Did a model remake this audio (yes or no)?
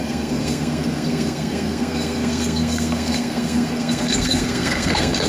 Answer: yes